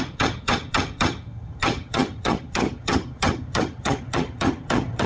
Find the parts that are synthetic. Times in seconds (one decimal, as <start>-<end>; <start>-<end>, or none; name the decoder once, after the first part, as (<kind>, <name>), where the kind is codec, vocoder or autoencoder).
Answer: 0.0-5.1 (vocoder, HiFi-GAN)